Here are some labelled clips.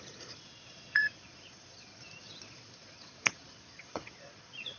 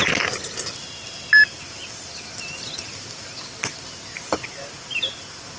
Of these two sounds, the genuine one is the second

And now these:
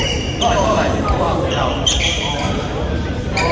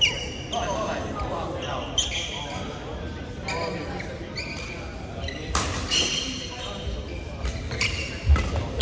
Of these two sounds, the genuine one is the second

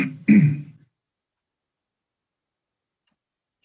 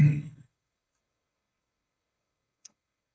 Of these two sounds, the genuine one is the first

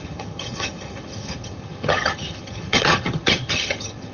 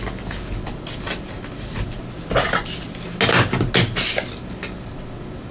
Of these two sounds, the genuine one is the second